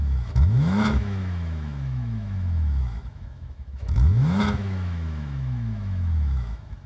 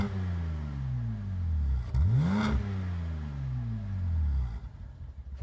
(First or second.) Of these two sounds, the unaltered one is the second